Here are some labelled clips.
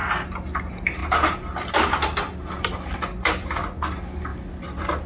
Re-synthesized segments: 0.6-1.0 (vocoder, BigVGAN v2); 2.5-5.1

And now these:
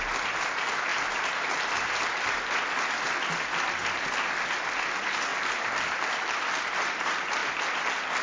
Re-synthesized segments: 0.9-2.4 (vocoder, BigVGAN v2); 5.3-6.4

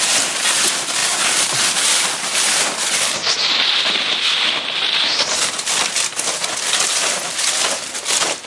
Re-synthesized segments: none

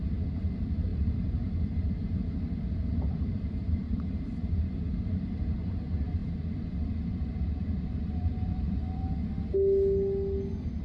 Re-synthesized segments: 0.9-5.4 (vocoder, BigVGAN v2); 6.2-9.0